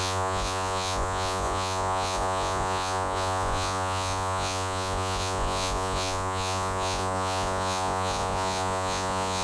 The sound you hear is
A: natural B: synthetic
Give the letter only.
B